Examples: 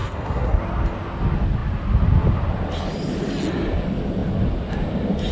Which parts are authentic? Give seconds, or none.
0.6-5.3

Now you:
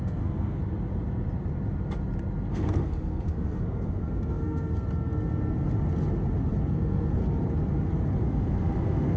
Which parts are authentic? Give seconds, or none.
0.6-2.5; 4.7-6.7; 7.2-8.2

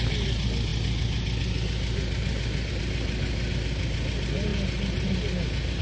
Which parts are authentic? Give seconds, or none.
0.0-5.8

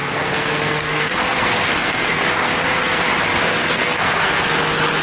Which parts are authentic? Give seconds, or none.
3.0-3.6; 4.5-5.0

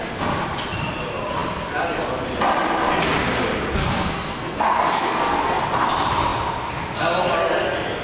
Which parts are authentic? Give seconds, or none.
0.0-3.8; 5.6-8.0